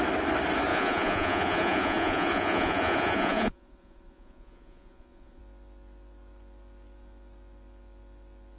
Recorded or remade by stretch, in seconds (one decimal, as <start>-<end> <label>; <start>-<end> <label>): 0.0-0.7 recorded; 0.7-5.4 remade; 5.4-8.6 recorded